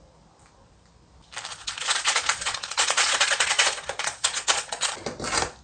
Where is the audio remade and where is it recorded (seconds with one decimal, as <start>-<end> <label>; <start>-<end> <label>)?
0.0-1.5 recorded; 1.5-4.9 remade; 4.9-5.6 recorded